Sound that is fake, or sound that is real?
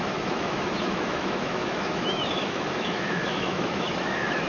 fake